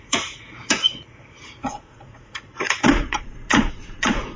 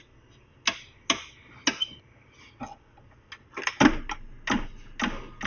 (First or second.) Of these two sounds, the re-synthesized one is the first